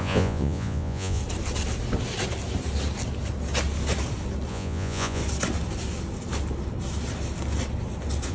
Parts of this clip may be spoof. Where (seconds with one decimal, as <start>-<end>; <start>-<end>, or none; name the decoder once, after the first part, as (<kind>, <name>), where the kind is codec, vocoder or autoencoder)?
0.0-1.2 (vocoder, Vocos); 4.5-5.2